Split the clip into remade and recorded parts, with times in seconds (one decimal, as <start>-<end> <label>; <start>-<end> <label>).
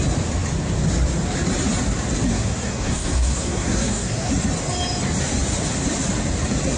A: 0.0-2.3 recorded; 2.3-4.3 remade; 4.3-6.8 recorded